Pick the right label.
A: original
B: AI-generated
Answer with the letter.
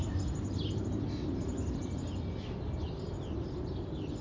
A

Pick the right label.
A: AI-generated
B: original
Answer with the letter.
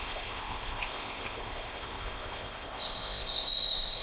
A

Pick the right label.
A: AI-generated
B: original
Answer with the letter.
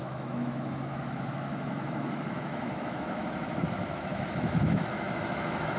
A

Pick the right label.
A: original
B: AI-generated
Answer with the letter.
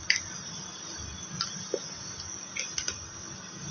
A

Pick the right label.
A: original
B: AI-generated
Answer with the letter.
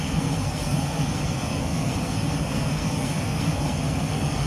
B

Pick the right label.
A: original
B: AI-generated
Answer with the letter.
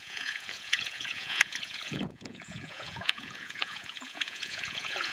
B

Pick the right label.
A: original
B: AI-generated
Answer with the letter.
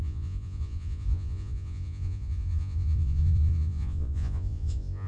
B